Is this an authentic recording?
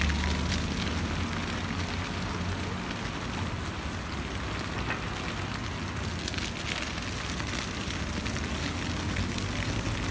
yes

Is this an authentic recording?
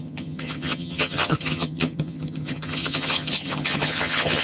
no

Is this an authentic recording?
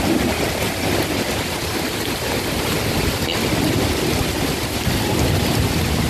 yes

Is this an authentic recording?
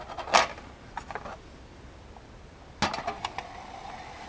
yes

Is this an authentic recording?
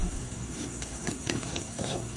no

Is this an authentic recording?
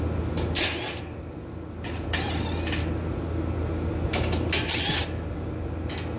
yes